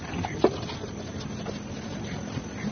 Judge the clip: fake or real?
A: real